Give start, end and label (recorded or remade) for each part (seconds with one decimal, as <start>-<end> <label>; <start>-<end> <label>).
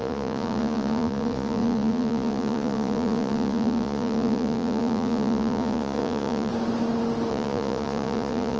0.0-6.5 remade; 6.5-7.3 recorded; 7.3-8.6 remade